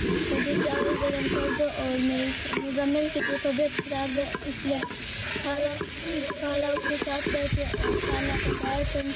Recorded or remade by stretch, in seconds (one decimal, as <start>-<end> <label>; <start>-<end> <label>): 0.0-4.1 recorded; 4.1-6.9 remade; 6.9-9.2 recorded